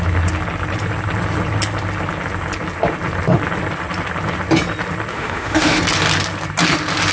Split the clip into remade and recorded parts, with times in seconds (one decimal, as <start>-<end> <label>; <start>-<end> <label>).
0.0-5.1 recorded; 5.1-5.8 remade; 5.8-7.1 recorded